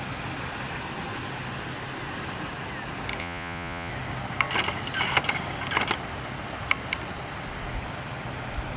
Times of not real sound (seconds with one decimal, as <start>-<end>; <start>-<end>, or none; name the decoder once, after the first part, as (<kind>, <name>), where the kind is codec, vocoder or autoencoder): 3.2-3.9 (vocoder, Vocos)